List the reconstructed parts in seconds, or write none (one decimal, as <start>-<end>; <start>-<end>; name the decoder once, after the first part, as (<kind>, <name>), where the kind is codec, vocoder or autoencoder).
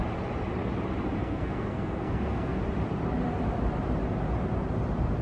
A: 1.2-2.6 (codec, SNAC)